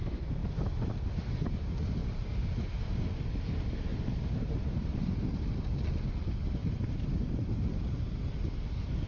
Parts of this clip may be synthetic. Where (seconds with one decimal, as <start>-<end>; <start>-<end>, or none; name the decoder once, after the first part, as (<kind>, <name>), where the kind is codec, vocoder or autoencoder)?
0.4-1.1 (vocoder, BigVGAN v2); 2.0-2.8; 3.9-5.1; 6.6-8.1